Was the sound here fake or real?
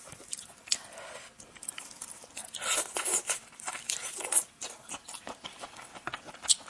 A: real